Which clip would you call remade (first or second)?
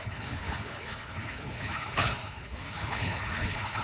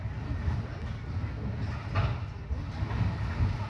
first